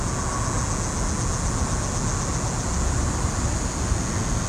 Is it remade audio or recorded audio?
recorded